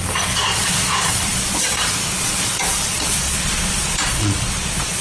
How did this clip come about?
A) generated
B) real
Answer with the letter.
A